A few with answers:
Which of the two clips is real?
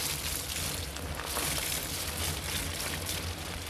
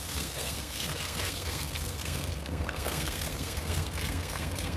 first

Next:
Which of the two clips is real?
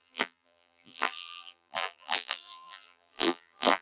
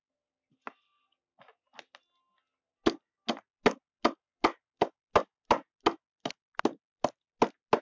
second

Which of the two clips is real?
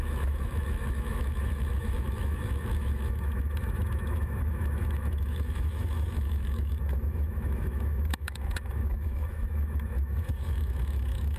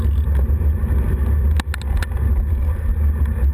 second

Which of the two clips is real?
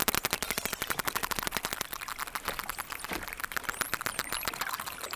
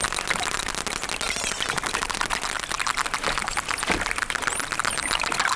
second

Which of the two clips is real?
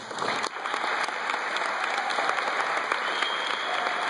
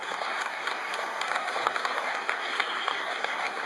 first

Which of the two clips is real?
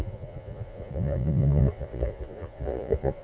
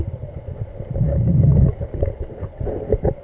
second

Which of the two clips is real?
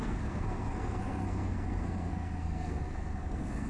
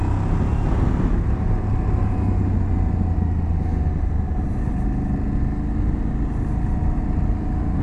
second